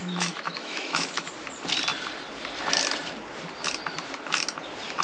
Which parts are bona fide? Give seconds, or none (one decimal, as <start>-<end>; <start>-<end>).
1.3-5.0